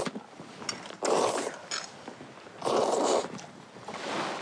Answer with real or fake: real